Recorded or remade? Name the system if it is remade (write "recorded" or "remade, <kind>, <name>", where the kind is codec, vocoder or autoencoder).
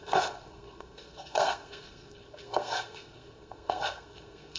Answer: remade, codec, SNAC